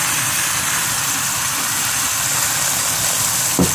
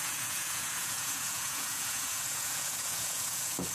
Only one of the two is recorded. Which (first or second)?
first